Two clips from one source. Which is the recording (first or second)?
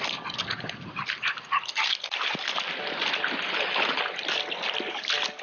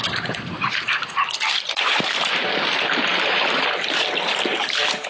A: first